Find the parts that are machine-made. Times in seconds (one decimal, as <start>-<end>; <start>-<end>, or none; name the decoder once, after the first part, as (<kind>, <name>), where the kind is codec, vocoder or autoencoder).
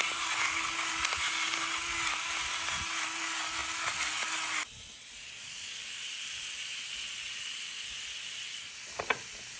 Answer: none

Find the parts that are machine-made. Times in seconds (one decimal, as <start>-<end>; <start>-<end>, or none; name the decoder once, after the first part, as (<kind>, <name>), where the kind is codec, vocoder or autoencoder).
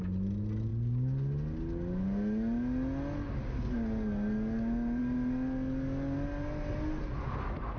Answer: none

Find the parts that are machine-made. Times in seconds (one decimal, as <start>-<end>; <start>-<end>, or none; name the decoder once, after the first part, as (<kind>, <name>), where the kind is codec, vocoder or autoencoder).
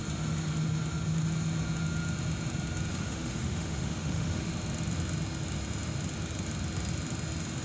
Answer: 2.9-4.5 (autoencoder, DAC-VAE)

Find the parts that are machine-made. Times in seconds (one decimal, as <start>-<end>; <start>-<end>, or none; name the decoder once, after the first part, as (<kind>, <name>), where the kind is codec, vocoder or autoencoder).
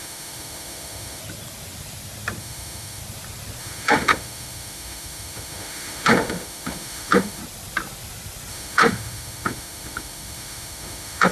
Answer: 0.0-1.2 (autoencoder, DAC-VAE); 2.4-3.0; 3.6-7.4; 8.5-11.3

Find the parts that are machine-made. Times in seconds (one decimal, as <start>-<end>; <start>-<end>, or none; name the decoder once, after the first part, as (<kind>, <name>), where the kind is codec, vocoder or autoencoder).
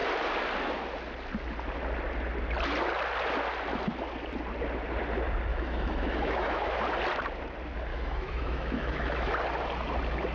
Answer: 5.5-6.8 (autoencoder, DAC-VAE); 7.9-9.3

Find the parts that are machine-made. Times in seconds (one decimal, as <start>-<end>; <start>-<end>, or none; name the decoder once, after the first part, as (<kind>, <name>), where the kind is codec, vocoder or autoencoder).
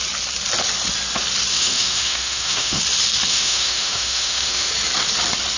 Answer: 1.5-2.8 (autoencoder, DAC-VAE); 3.3-4.7